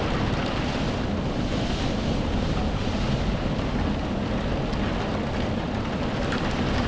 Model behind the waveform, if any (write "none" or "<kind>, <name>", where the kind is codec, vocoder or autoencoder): none